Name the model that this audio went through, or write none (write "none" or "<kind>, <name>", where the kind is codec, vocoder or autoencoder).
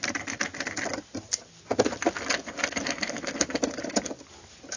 none